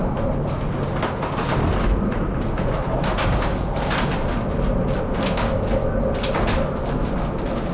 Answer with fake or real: real